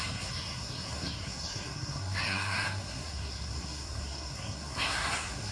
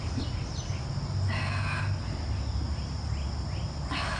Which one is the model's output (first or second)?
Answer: first